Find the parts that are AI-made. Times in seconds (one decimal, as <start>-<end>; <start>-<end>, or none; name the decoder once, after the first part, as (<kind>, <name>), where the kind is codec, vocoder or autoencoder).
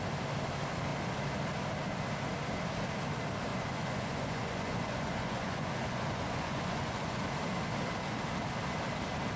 3.5-7.3 (vocoder, Vocos)